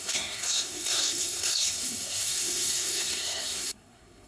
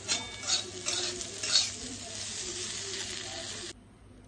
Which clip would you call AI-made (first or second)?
first